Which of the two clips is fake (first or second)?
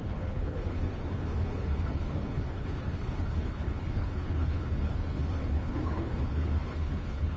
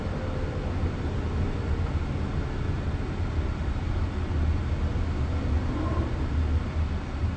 first